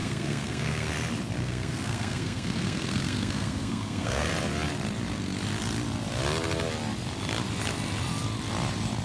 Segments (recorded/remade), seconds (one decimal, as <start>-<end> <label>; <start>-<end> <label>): 0.0-0.9 remade; 0.9-1.4 recorded; 1.4-4.3 remade; 4.3-9.0 recorded